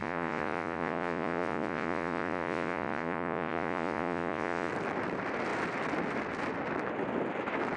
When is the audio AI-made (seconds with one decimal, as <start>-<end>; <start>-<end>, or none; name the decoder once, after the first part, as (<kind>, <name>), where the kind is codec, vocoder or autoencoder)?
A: 0.0-4.7 (vocoder, Vocos)